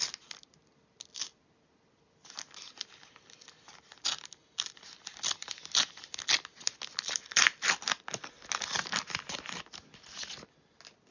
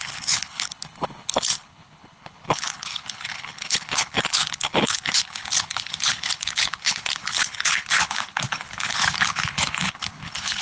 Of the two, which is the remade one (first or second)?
second